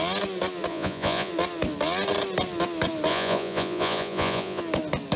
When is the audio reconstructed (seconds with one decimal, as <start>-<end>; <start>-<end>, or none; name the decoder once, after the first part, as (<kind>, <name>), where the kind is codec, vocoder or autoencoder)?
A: 0.7-1.3 (vocoder, Vocos); 3.1-4.6